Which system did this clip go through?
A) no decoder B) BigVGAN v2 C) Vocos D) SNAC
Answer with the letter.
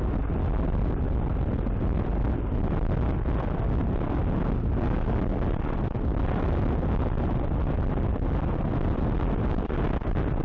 A